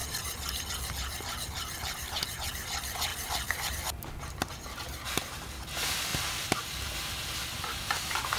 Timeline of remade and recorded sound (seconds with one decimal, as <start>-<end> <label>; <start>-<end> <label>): 0.0-3.1 recorded; 3.1-3.7 remade; 3.7-6.1 recorded; 6.1-7.0 remade; 7.0-8.4 recorded